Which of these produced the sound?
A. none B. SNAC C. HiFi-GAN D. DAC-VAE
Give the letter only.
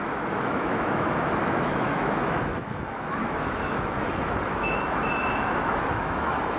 D